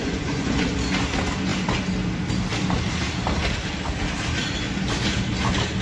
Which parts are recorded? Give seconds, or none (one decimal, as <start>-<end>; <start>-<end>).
0.7-5.8